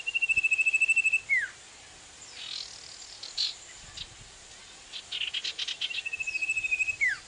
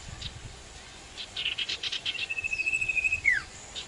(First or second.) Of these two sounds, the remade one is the second